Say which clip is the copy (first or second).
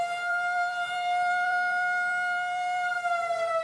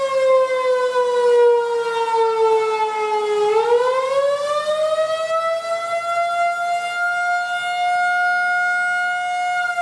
first